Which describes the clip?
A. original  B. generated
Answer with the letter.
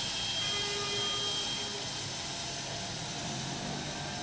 A